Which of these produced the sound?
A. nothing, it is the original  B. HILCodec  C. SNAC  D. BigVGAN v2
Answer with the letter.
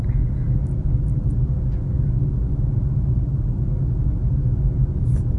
A